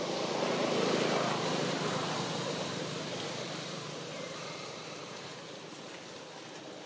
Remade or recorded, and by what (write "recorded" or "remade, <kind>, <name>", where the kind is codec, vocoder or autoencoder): remade, vocoder, BigVGAN v2